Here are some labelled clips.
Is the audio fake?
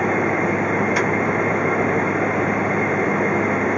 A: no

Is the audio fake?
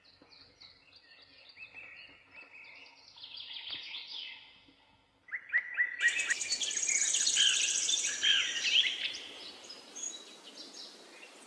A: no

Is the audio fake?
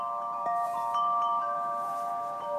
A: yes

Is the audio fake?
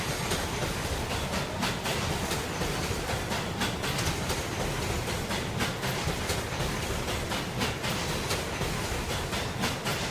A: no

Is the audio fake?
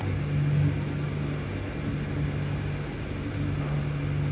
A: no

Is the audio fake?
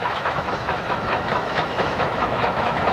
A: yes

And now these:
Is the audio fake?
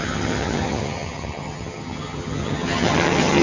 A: yes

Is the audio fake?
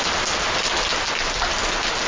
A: no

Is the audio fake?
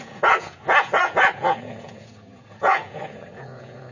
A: yes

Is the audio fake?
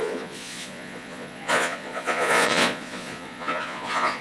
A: yes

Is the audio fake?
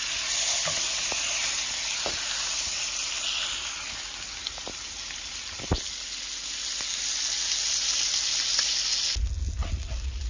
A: no